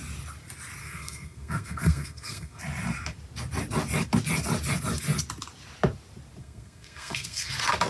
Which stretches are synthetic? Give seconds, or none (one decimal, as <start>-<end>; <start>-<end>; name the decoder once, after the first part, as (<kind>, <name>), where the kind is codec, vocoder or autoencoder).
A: 0.8-2.6 (codec, SNAC); 6.4-7.5